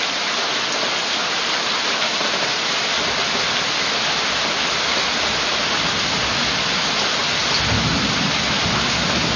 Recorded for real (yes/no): yes